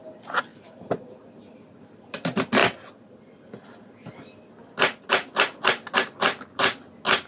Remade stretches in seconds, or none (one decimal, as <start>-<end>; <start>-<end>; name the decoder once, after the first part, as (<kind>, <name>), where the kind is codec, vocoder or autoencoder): none